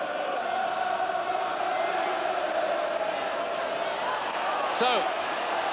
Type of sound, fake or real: real